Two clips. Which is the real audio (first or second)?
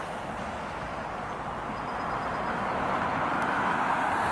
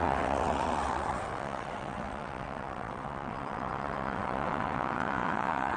first